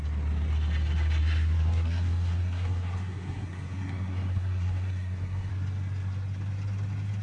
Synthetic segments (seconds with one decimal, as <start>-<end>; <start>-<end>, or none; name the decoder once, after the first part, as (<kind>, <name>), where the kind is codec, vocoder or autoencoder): 1.2-5.5 (codec, SNAC)